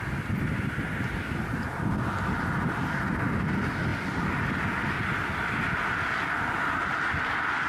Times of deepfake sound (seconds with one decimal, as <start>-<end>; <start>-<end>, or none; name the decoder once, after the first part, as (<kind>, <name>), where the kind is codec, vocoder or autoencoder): none